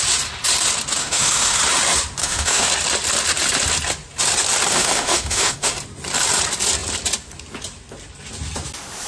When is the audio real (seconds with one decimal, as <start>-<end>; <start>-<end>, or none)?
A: 0.0-1.0; 1.6-2.2; 2.7-4.7; 5.7-9.1